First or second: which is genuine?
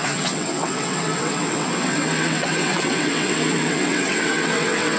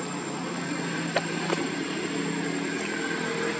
second